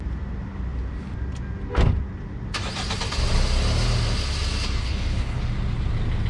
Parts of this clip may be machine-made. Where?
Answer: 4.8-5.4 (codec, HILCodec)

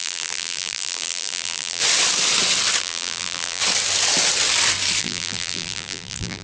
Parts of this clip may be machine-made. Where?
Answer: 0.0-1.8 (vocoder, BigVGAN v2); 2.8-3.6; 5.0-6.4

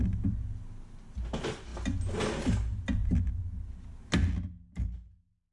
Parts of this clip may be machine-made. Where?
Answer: none